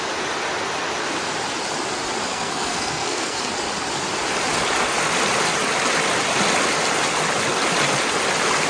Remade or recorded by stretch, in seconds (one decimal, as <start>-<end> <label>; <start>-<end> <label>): 0.0-2.3 recorded; 2.3-3.5 remade; 3.5-8.7 recorded